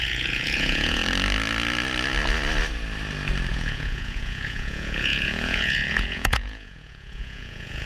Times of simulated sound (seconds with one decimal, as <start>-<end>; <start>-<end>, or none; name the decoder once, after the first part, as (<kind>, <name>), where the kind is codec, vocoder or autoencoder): 0.0-1.0 (vocoder, Vocos); 3.5-7.9